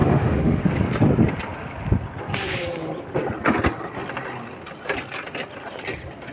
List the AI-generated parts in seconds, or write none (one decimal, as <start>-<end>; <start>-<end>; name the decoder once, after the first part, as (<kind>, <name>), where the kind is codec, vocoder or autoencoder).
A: 0.0-0.6 (autoencoder, DAC-VAE)